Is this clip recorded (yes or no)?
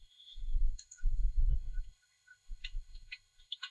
no